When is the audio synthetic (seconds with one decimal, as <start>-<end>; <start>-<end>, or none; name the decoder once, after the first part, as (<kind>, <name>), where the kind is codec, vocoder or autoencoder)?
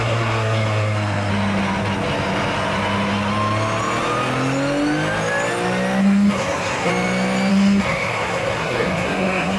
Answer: 0.0-1.3 (codec, SNAC); 6.0-6.9; 7.5-9.6